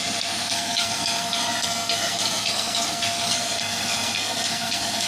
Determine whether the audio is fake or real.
fake